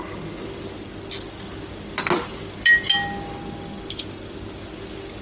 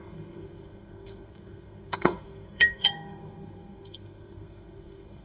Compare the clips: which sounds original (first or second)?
first